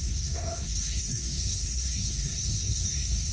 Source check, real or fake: fake